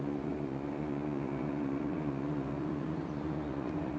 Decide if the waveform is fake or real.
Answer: fake